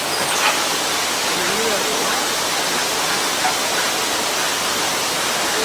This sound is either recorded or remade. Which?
recorded